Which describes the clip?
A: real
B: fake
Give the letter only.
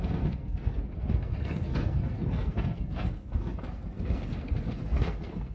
B